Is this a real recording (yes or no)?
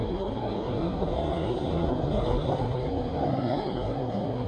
no